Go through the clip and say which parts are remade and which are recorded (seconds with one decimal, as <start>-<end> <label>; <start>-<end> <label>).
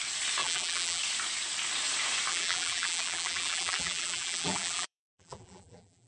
0.0-0.4 recorded; 0.4-1.0 remade; 1.0-2.3 recorded; 2.3-6.1 remade